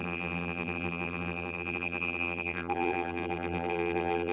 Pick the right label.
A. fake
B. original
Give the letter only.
A